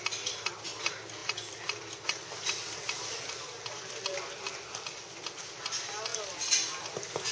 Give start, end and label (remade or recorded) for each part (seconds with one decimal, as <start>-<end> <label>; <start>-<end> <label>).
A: 0.0-7.3 recorded